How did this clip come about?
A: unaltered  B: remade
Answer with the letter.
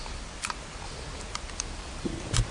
A